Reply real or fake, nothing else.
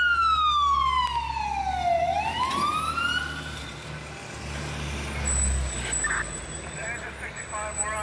real